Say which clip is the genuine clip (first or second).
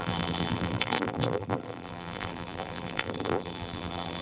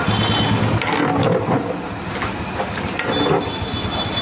second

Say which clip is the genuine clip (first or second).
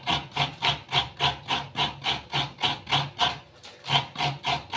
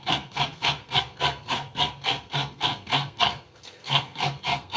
first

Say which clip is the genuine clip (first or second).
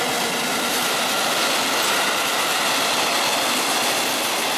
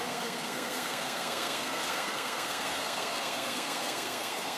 first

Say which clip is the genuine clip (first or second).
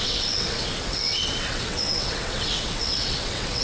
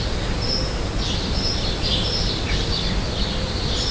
second